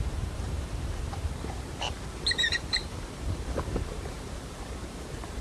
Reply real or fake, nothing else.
fake